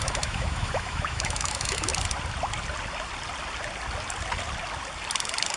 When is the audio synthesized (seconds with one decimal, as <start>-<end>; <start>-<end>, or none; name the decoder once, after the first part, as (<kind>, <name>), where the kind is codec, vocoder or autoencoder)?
0.0-1.9 (autoencoder, DAC-VAE)

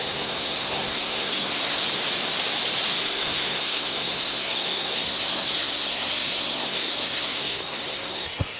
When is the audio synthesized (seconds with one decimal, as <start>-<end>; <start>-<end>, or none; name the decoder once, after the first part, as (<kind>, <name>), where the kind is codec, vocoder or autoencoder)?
0.0-1.8 (codec, SNAC); 3.0-8.6

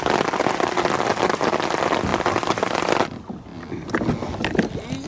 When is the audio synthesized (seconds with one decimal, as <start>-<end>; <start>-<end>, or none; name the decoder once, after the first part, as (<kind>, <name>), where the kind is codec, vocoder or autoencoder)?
none

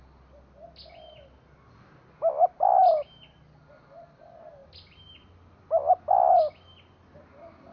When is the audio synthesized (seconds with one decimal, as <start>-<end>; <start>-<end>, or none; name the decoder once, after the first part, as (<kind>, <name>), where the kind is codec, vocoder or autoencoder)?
none